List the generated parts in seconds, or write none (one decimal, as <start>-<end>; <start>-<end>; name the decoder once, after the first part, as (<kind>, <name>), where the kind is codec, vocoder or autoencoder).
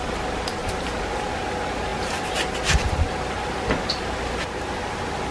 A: none